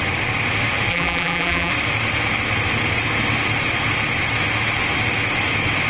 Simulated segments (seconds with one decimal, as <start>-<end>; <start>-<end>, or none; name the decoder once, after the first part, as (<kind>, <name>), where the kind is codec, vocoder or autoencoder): 0.9-1.7 (vocoder, BigVGAN v2)